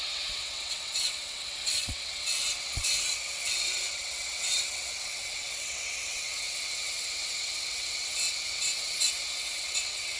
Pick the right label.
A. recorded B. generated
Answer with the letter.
B